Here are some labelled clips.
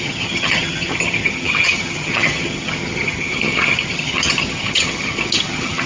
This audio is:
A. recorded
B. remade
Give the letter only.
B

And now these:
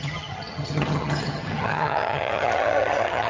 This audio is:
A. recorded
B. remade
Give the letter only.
B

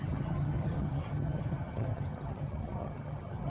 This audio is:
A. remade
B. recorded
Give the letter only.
A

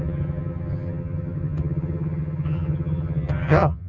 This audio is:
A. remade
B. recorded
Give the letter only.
A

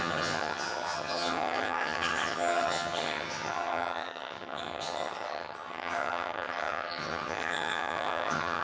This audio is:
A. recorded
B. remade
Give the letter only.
B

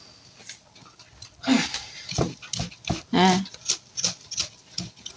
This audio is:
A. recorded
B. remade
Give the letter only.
A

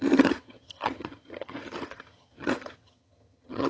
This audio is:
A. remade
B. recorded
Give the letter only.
A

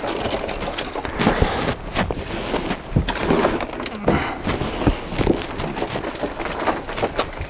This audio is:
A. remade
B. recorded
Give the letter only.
B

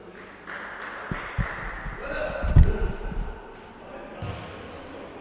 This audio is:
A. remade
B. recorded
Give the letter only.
B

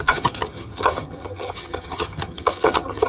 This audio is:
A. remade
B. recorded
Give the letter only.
A